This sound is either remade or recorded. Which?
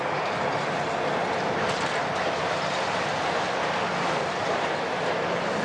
recorded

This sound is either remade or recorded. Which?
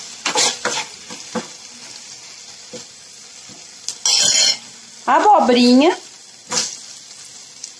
recorded